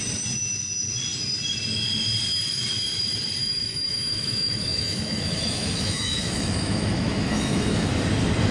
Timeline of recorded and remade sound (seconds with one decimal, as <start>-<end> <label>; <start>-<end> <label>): 0.0-3.4 recorded; 3.4-7.9 remade; 7.9-8.5 recorded